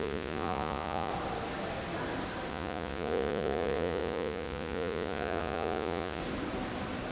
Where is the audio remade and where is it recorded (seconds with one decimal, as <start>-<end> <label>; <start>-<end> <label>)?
0.0-1.1 remade; 1.1-2.5 recorded; 2.5-6.2 remade; 6.2-7.1 recorded